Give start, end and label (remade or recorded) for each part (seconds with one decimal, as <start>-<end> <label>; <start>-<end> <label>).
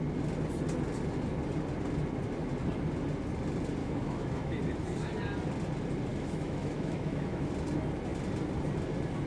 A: 0.0-3.8 recorded; 3.8-4.6 remade; 4.6-6.1 recorded; 6.1-7.5 remade; 7.5-9.3 recorded